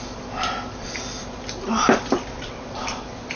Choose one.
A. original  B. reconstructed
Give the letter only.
B